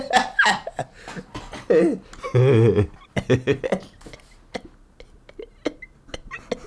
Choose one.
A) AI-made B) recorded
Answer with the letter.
B